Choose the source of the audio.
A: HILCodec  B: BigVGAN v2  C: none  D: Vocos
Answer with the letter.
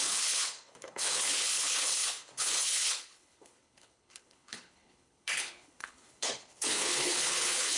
A